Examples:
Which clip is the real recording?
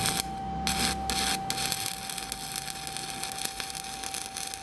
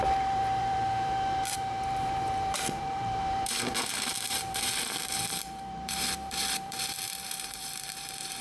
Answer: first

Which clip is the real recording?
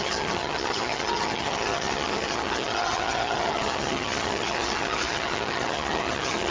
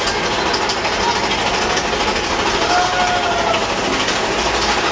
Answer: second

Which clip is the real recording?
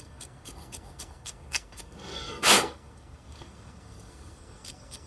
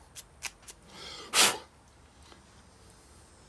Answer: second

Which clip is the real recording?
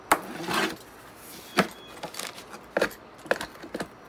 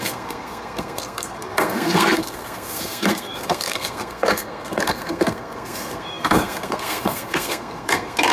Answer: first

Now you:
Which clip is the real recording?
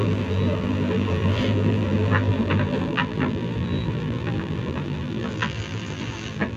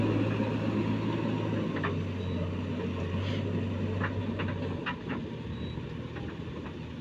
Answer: second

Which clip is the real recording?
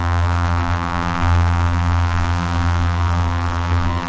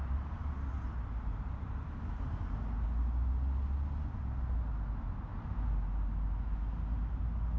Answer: second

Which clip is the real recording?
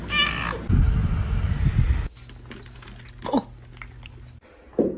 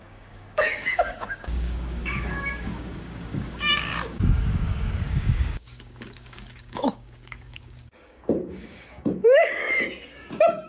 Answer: first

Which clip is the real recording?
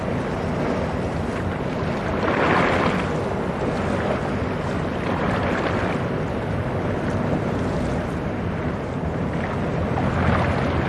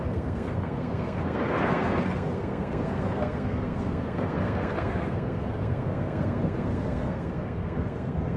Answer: first